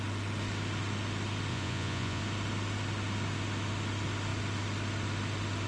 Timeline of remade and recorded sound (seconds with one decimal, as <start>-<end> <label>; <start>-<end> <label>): 0.0-1.5 recorded; 1.5-2.2 remade; 2.2-5.7 recorded